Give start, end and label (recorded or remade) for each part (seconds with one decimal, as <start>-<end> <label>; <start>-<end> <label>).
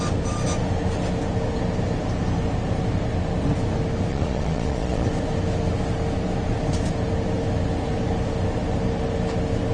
0.0-4.1 recorded; 4.1-5.1 remade; 5.1-9.7 recorded